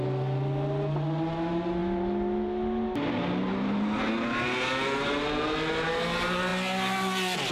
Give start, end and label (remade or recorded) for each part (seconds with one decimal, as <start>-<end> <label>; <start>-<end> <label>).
0.0-7.5 recorded

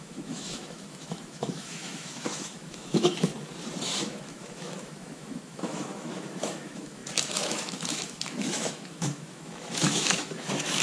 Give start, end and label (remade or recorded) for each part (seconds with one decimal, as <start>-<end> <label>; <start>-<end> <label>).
0.0-3.3 remade; 3.3-3.8 recorded; 3.8-10.8 remade

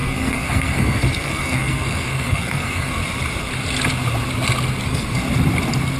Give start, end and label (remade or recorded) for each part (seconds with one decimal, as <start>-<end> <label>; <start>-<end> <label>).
0.0-3.0 remade; 3.0-4.8 recorded; 4.8-5.2 remade; 5.2-6.0 recorded

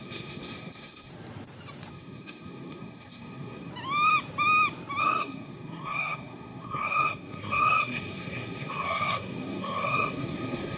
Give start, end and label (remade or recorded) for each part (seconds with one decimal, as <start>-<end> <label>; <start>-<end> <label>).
0.0-1.1 remade; 1.1-1.9 recorded; 1.9-3.7 remade; 3.7-5.0 recorded; 5.0-10.8 remade

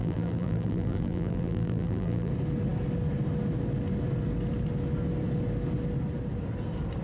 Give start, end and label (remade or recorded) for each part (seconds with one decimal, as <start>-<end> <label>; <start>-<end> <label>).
0.0-2.3 remade; 2.3-7.0 recorded

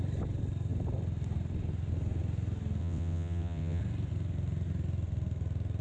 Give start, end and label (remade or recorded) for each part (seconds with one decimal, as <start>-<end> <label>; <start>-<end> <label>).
0.0-2.8 recorded; 2.8-3.8 remade; 3.8-5.8 recorded

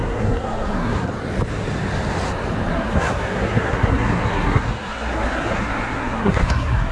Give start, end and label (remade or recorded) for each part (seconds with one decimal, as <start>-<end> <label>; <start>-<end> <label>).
0.0-1.1 remade; 1.1-2.7 recorded; 2.7-6.9 remade